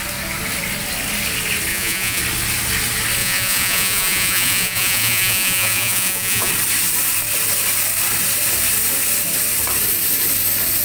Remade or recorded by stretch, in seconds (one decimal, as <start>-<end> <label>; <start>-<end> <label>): 0.0-1.7 recorded; 1.7-2.2 remade; 2.2-3.2 recorded; 3.2-6.5 remade; 6.5-10.8 recorded